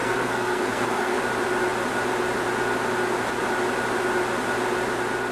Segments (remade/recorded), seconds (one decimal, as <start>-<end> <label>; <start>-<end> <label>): 0.0-1.2 remade; 1.2-5.3 recorded